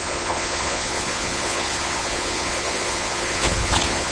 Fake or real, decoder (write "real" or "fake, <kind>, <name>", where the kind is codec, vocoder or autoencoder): fake, vocoder, Vocos